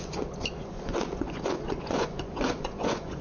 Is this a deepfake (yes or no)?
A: yes